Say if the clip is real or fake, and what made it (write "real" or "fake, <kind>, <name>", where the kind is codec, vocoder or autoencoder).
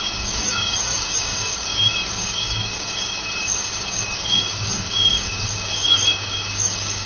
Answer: fake, codec, DAC